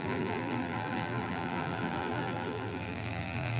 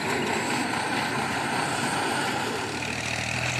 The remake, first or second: first